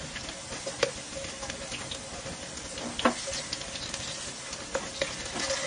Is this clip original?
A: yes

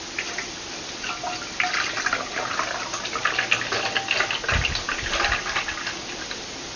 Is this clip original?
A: yes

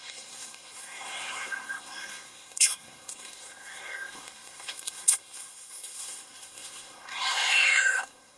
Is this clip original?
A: no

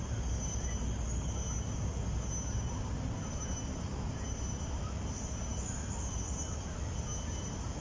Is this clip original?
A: yes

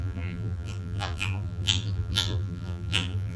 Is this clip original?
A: no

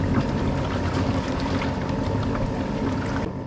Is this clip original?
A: yes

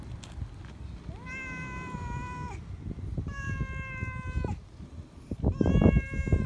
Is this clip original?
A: yes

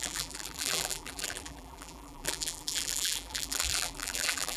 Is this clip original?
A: no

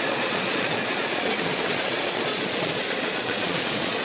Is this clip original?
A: no